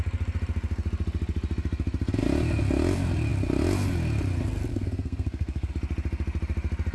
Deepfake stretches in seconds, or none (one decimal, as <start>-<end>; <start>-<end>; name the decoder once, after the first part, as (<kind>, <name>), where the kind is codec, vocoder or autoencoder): 4.7-5.7 (codec, SNAC)